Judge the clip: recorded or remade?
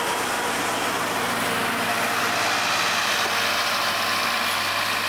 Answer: recorded